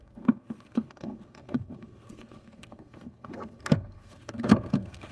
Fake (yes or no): yes